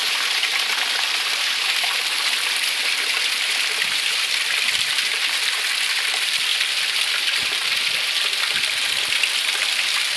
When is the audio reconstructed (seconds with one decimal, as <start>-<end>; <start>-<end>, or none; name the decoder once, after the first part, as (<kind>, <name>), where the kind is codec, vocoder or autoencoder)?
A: 1.0-6.5 (vocoder, BigVGAN v2); 7.1-10.2